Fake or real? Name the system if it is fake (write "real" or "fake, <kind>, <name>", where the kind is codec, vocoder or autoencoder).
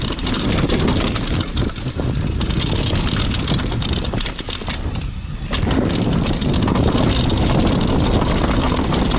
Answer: real